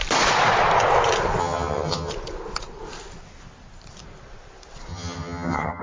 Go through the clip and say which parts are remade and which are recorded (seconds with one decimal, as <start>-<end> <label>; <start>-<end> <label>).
0.0-1.4 recorded; 1.4-2.1 remade; 2.1-4.9 recorded; 4.9-5.8 remade